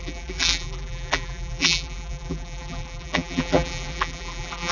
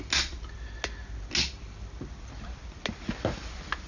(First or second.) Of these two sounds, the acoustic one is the second